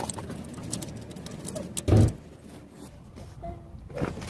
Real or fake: real